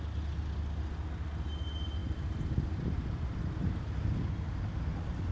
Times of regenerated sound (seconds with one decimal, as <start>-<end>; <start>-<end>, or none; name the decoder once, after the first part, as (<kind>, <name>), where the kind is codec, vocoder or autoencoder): none